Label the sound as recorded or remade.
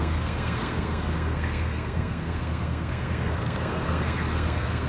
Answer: remade